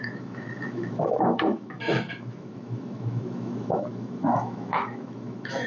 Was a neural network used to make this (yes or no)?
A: yes